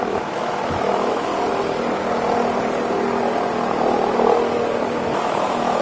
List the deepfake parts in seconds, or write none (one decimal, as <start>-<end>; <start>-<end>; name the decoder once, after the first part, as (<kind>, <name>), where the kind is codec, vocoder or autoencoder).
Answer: 0.0-1.3 (autoencoder, DAC-VAE); 4.8-5.8